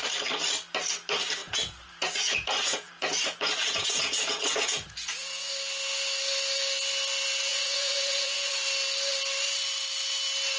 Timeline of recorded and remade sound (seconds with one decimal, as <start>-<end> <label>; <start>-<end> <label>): 0.0-1.4 recorded; 1.4-5.5 remade; 5.5-7.5 recorded; 7.5-8.5 remade; 8.5-10.6 recorded